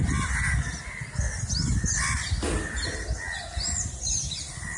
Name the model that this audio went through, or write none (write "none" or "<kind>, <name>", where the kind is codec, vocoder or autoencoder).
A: none